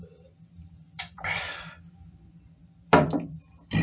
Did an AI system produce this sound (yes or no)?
yes